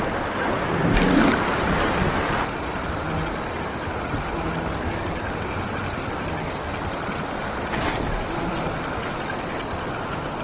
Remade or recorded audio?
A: recorded